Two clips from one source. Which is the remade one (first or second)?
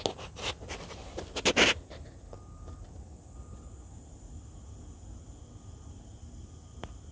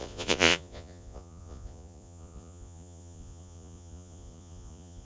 second